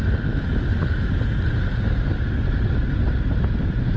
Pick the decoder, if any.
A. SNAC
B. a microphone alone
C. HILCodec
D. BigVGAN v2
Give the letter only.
B